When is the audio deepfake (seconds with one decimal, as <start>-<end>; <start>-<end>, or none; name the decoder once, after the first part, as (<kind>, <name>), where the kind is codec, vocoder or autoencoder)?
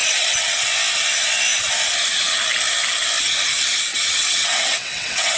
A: 0.0-0.7 (vocoder, WaveNeXt); 3.9-5.4